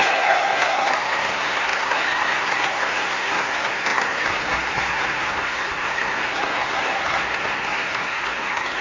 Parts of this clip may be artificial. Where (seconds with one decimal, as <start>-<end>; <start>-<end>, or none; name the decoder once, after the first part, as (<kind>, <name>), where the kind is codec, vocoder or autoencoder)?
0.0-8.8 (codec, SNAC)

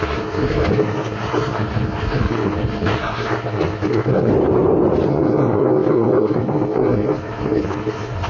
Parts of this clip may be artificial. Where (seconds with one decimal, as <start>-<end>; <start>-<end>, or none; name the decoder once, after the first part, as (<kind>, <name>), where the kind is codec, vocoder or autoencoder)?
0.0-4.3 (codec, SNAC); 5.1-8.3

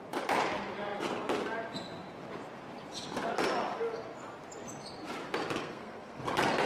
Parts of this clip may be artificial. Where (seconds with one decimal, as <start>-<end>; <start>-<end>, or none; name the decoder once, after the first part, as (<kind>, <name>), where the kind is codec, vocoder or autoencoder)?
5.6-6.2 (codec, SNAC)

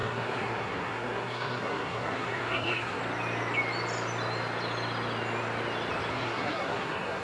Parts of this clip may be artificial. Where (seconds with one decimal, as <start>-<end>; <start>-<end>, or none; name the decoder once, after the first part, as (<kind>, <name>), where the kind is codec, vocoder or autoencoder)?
0.0-3.0 (codec, SNAC); 6.1-7.2

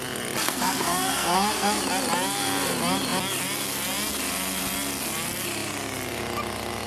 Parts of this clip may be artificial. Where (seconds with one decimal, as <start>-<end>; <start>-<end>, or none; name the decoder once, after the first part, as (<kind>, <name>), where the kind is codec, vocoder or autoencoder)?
0.4-1.8 (codec, SNAC)

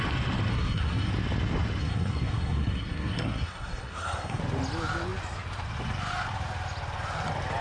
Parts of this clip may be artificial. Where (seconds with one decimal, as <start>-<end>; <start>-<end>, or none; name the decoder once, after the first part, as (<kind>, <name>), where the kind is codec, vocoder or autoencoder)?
0.5-1.1 (codec, SNAC); 1.8-4.4

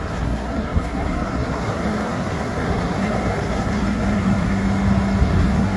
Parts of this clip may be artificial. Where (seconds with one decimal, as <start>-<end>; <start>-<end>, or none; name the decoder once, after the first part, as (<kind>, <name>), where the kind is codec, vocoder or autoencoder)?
0.0-4.6 (codec, SNAC); 5.2-5.8